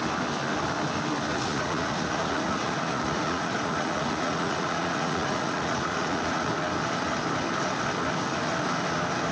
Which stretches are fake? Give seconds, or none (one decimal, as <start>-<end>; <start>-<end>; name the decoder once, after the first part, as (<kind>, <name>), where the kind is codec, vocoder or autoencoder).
1.3-6.5 (vocoder, Vocos)